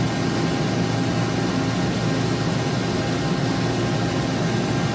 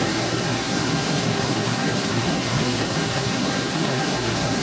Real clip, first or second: first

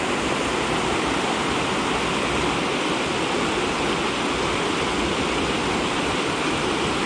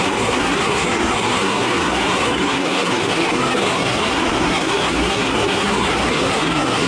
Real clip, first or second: first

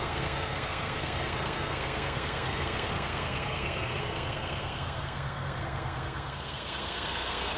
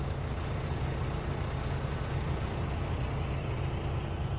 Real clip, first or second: second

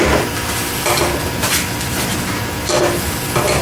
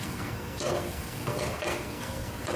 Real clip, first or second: first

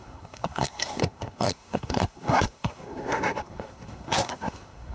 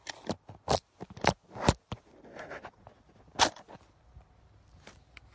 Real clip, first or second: second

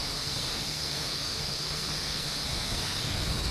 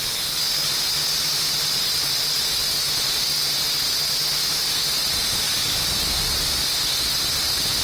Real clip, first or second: second